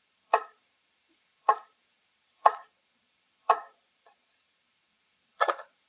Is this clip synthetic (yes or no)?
yes